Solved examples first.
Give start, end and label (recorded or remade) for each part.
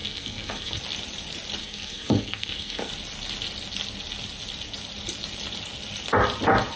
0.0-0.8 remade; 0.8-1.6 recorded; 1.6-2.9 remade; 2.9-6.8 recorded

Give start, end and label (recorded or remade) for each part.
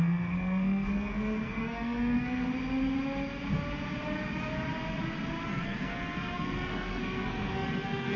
0.0-2.5 remade; 2.5-5.5 recorded; 5.5-8.2 remade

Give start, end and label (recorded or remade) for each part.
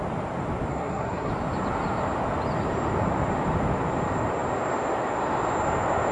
0.0-0.7 recorded; 0.7-1.3 remade; 1.3-6.1 recorded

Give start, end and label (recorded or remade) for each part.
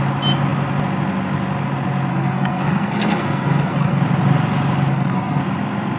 0.0-2.1 recorded; 2.1-4.0 remade; 4.0-4.9 recorded; 4.9-5.4 remade; 5.4-6.0 recorded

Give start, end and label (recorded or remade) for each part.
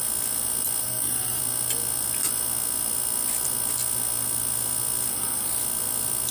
0.0-0.8 recorded; 0.8-1.4 remade; 1.4-5.1 recorded; 5.1-5.6 remade; 5.6-6.3 recorded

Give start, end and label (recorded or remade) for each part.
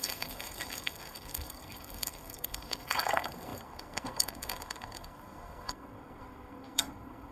0.0-7.3 remade